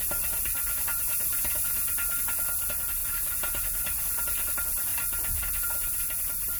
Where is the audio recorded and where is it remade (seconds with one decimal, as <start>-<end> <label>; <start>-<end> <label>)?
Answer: 0.0-0.9 recorded; 0.9-1.6 remade; 1.6-3.0 recorded; 3.0-4.0 remade; 4.0-6.6 recorded